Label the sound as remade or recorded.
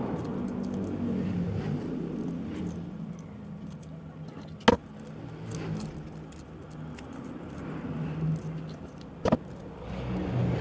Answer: recorded